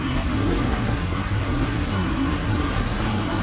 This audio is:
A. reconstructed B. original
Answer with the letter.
A